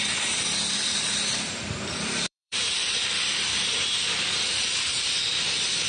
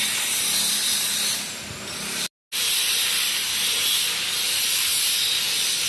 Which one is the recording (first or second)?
second